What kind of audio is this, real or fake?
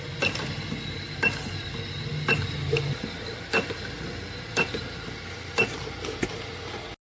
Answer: real